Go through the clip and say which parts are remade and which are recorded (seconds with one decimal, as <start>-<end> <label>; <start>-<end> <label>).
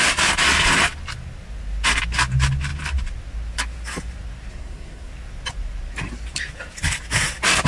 0.0-4.5 recorded; 4.5-5.1 remade; 5.1-7.7 recorded